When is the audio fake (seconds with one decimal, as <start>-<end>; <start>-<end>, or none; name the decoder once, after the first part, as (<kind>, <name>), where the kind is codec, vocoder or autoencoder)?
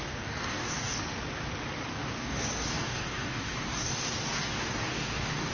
0.0-1.0 (codec, DAC); 1.9-5.5